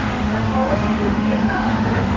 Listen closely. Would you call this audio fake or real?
fake